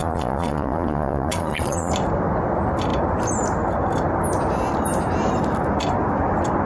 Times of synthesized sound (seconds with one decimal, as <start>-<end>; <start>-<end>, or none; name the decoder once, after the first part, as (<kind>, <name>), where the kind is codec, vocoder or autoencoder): 0.0-1.9 (vocoder, Vocos)

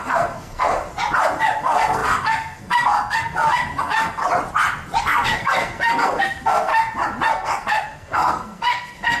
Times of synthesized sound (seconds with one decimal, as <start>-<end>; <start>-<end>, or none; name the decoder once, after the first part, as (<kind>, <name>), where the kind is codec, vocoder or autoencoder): 0.0-0.9 (codec, SNAC); 1.6-4.2; 5.0-6.7; 7.3-9.2

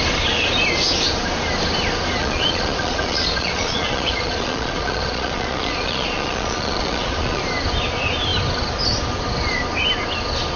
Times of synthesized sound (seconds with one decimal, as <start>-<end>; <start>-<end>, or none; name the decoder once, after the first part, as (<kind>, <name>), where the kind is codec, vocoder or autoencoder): 2.2-7.4 (vocoder, Vocos)

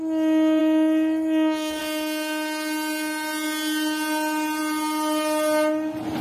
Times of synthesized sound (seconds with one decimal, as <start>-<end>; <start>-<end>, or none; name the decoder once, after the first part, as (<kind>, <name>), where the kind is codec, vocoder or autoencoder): 0.6-1.8 (autoencoder, DAC-VAE)

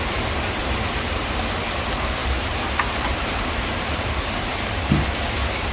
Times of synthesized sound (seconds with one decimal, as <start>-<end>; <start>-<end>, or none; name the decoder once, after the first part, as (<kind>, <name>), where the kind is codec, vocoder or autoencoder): 0.0-5.7 (vocoder, BigVGAN v2)

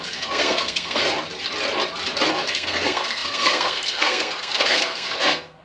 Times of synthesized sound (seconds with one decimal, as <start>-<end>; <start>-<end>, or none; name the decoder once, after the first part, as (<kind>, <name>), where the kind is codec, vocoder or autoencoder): 0.0-1.0 (codec, SNAC); 2.3-5.6

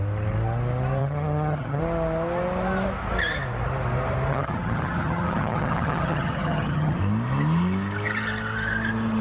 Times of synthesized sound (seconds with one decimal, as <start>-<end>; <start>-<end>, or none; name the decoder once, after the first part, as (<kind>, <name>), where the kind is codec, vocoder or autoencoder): 1.0-1.8 (vocoder, HiFi-GAN); 4.3-7.0

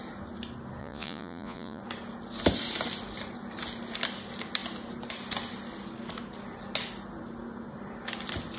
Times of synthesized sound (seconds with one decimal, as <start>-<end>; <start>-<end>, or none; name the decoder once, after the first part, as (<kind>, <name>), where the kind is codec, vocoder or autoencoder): 0.8-1.8 (vocoder, Vocos)